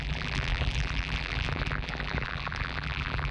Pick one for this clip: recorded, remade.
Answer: remade